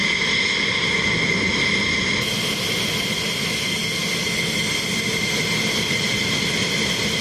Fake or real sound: real